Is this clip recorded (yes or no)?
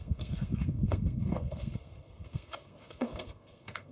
no